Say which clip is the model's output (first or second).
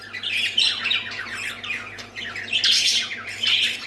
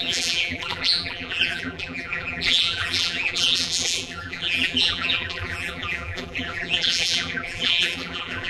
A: second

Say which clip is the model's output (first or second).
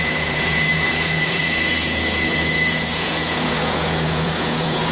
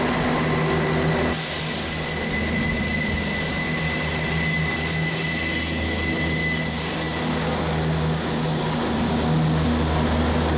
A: first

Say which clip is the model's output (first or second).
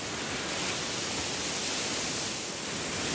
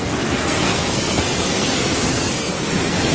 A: second